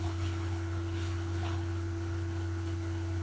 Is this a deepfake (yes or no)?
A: yes